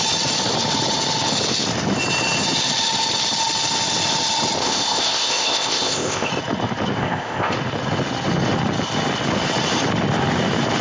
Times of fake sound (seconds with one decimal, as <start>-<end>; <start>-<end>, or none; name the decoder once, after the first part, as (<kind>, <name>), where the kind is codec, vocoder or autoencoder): 4.6-6.3 (codec, ZipCodec); 7.0-7.5